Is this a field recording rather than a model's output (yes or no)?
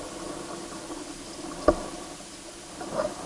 yes